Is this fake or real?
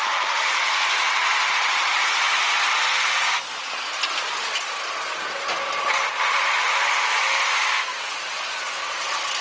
real